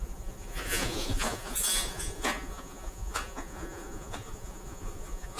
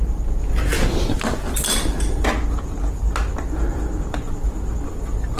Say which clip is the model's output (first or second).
first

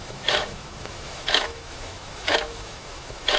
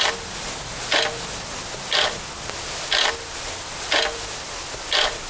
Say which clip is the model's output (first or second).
first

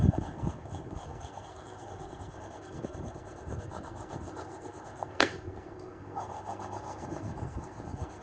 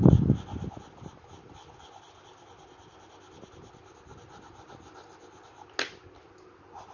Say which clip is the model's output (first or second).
first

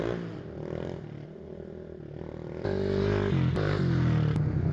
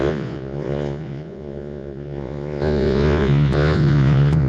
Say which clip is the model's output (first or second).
second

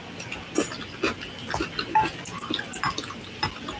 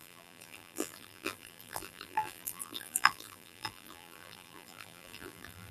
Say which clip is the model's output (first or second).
second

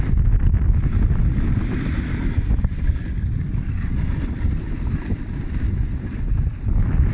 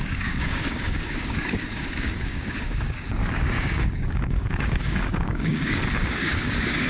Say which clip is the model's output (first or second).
second